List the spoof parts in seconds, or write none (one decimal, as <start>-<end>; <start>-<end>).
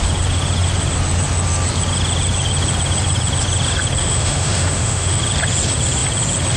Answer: 4.0-5.2